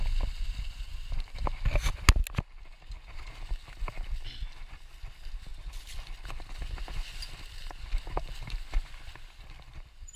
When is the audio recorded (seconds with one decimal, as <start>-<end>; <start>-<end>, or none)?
0.0-10.2